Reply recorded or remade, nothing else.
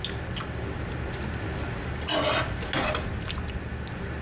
recorded